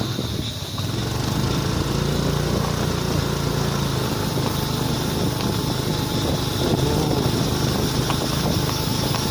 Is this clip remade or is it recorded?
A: recorded